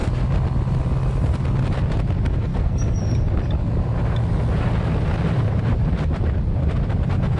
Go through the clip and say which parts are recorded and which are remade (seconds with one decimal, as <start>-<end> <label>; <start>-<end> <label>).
0.0-2.5 recorded; 2.5-3.0 remade; 3.0-7.4 recorded